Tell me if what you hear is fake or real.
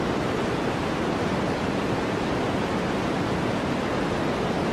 real